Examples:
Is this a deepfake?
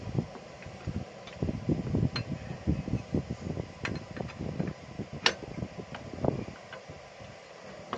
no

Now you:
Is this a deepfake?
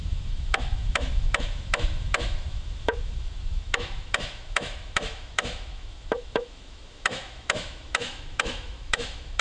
yes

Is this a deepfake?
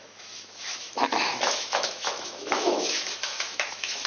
yes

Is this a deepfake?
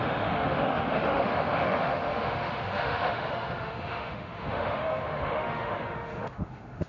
yes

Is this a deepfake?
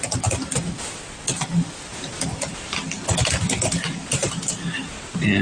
no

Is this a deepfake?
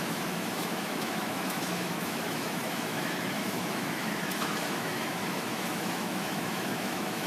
yes